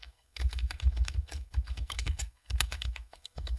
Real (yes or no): no